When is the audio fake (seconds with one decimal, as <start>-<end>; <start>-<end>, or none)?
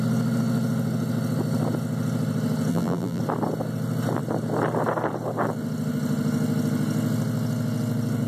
2.7-3.2